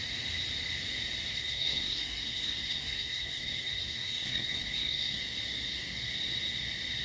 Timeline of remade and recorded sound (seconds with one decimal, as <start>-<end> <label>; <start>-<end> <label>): 0.0-1.3 recorded; 1.3-5.2 remade; 5.2-7.0 recorded